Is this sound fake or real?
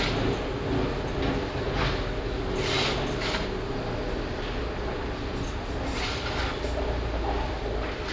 real